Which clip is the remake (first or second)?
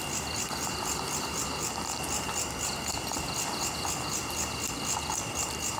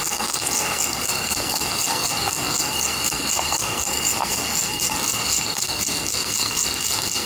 second